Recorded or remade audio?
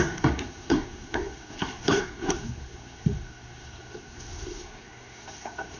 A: remade